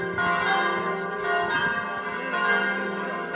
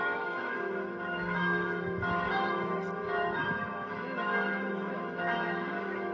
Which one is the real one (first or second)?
first